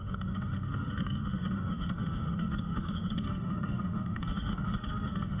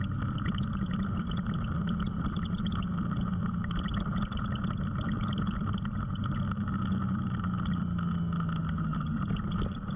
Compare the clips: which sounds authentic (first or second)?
second